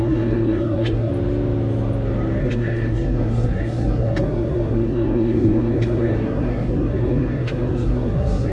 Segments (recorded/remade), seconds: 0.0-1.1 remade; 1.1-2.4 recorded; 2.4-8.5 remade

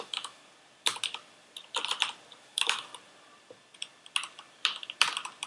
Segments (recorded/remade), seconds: 0.0-0.4 remade; 0.4-2.4 recorded; 2.4-2.9 remade; 2.9-5.5 recorded

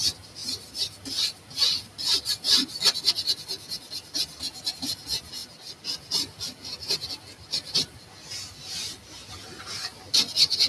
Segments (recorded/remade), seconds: 0.0-10.7 recorded